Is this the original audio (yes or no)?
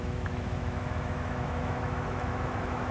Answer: no